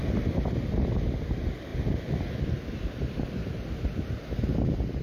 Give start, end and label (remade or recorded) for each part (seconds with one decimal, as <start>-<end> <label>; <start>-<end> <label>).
0.0-5.0 recorded